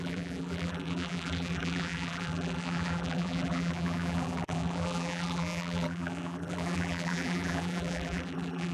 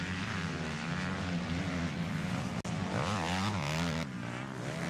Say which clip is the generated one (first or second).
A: first